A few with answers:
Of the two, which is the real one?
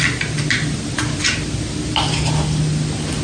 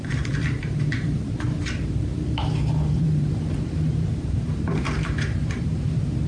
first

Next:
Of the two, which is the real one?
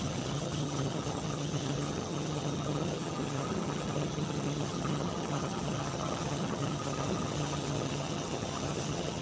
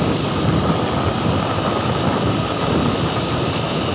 second